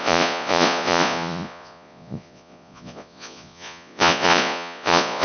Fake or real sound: fake